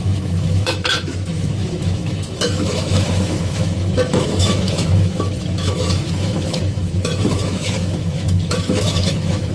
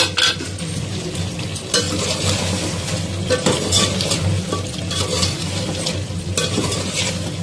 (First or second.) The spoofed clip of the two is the first